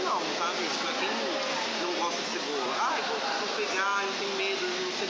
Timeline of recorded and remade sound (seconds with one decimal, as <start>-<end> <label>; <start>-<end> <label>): 0.0-5.1 recorded